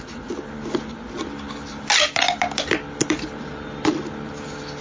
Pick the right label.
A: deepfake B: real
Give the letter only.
B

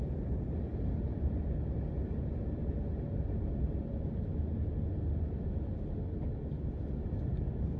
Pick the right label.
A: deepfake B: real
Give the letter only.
B